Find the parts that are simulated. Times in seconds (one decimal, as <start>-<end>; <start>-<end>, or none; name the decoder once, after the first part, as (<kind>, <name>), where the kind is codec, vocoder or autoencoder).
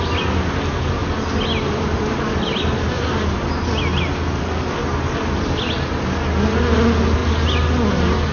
none